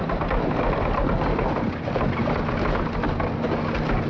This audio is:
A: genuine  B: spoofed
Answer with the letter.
A